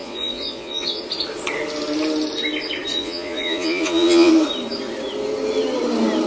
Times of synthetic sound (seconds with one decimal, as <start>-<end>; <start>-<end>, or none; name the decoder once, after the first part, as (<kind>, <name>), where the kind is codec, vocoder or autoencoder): 0.0-1.0 (vocoder, Vocos); 2.9-4.3